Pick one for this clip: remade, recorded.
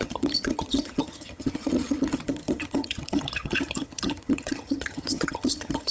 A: remade